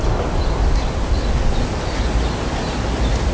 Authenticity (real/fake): real